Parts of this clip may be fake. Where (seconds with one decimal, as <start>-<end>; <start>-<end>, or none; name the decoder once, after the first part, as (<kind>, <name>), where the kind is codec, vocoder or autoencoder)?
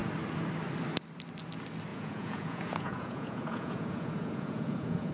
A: 1.9-5.1 (vocoder, Vocos)